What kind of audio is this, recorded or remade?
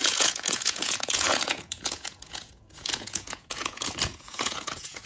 remade